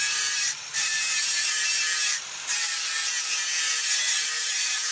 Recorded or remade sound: remade